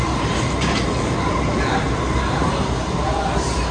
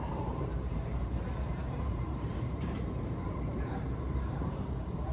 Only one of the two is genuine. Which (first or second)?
first